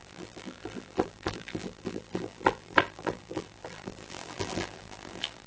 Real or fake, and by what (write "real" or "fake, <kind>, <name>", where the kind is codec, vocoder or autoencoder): fake, vocoder, BigVGAN v2